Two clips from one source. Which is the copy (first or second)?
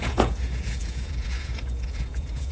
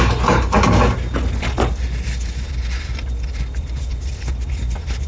first